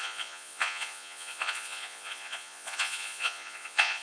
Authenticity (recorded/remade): remade